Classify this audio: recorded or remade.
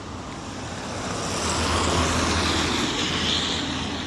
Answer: recorded